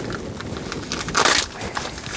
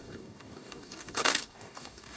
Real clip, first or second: first